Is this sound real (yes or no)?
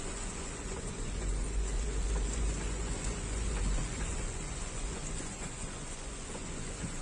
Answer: no